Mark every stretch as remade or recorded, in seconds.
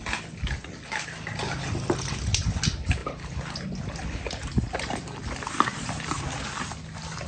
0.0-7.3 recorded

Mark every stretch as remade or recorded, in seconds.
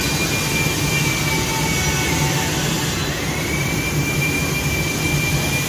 0.0-3.0 recorded; 3.0-4.3 remade; 4.3-5.7 recorded